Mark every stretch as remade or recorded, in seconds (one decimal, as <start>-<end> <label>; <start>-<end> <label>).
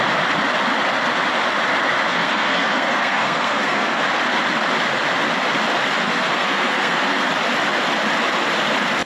0.0-2.1 recorded; 2.1-4.0 remade; 4.0-6.0 recorded; 6.0-7.3 remade; 7.3-9.1 recorded